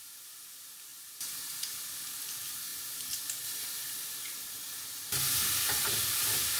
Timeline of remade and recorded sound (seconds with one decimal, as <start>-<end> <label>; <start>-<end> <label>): 0.0-6.6 recorded